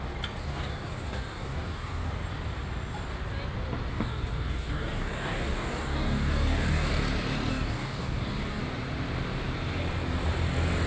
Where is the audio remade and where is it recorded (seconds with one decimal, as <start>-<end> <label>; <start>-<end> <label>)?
0.0-0.4 recorded; 0.4-2.1 remade; 2.1-3.9 recorded; 3.9-6.9 remade; 6.9-7.5 recorded; 7.5-8.6 remade; 8.6-10.9 recorded